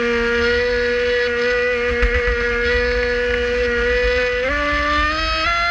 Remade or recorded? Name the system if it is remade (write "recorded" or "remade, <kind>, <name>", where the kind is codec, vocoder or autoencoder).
recorded